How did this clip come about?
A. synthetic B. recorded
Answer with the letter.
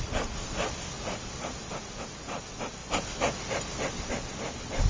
B